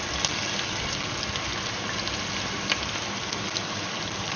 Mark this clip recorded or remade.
recorded